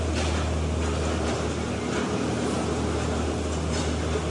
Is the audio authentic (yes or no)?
yes